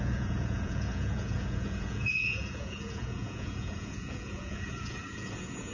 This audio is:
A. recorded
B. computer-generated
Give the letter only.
B